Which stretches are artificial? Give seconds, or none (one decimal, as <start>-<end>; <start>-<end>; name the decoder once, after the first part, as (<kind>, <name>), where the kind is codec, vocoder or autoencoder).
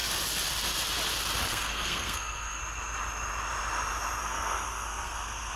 1.5-2.6 (codec, SNAC); 4.2-5.6